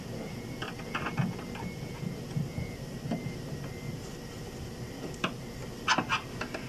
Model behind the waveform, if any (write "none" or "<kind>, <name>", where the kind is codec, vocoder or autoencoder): vocoder, BigVGAN v2